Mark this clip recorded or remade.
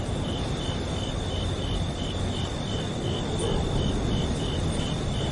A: recorded